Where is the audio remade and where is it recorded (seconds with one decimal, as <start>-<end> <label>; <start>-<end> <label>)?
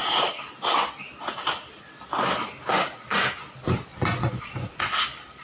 0.0-2.7 recorded; 2.7-3.2 remade; 3.2-3.9 recorded; 3.9-4.9 remade; 4.9-5.4 recorded